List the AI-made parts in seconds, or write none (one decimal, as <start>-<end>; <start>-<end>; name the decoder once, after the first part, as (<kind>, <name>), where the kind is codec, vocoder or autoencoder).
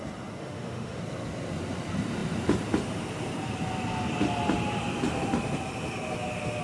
0.4-1.0 (autoencoder, DAC-VAE)